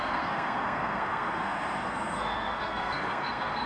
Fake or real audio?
fake